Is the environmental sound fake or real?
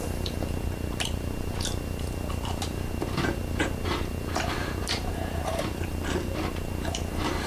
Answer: fake